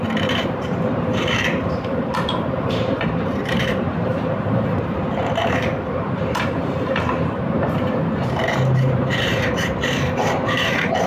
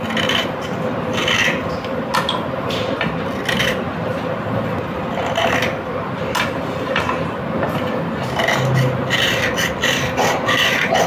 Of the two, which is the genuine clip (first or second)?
second